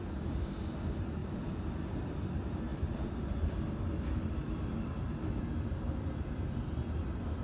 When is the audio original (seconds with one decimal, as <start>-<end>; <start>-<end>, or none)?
none

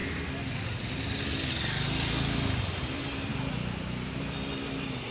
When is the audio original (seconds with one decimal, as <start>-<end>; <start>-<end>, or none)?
0.0-2.6; 3.3-5.1

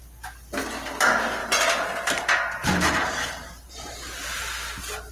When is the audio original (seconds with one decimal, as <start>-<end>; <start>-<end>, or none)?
0.0-1.4; 4.5-5.1

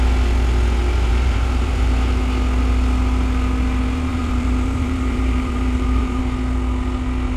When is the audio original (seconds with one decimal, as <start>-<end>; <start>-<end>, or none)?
0.0-1.1; 2.2-4.1; 6.2-7.4

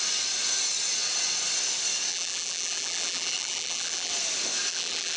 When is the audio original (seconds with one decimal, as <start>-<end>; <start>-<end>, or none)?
0.0-2.1; 4.1-4.7

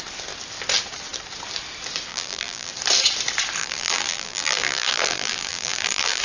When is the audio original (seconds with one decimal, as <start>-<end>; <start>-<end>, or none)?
0.0-2.1; 2.7-3.6